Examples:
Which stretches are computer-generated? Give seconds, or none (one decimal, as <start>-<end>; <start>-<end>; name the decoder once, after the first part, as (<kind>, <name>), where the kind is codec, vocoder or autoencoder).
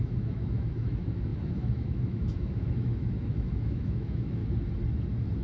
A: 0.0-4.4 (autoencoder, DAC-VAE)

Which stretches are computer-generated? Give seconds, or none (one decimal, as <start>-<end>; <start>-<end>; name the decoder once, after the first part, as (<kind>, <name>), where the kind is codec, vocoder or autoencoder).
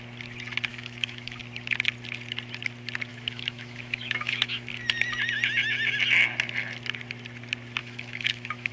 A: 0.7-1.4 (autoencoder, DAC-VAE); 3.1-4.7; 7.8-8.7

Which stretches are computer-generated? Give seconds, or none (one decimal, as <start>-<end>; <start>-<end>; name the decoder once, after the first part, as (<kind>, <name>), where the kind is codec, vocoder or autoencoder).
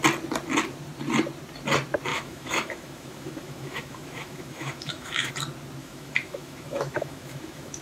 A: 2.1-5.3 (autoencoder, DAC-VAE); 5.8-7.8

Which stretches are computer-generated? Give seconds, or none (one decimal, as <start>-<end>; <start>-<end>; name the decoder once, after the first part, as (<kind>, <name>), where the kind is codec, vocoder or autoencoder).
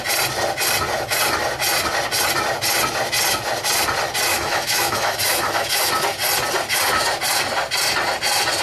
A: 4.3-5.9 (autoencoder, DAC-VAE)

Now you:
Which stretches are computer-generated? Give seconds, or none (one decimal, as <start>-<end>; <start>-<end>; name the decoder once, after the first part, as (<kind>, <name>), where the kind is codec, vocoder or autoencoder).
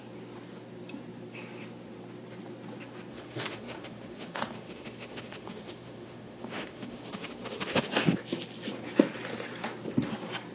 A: 3.1-7.9 (autoencoder, DAC-VAE)